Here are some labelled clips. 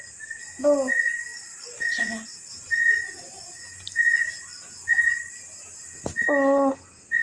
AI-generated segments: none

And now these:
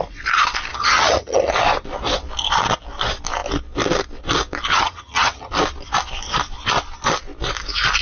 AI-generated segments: 0.7-1.5 (vocoder, HiFi-GAN); 4.7-5.5

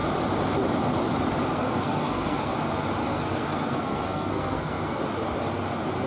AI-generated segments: 1.5-2.5 (codec, SNAC); 3.0-5.0

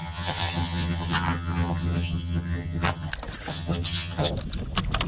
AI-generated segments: 0.0-3.1 (vocoder, HiFi-GAN); 3.5-4.3